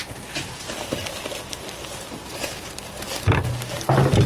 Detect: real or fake real